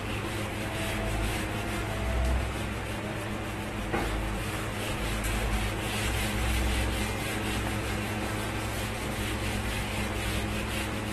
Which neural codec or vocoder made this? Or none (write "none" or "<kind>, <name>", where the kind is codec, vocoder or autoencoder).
none